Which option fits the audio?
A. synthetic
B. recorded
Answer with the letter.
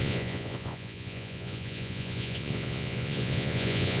A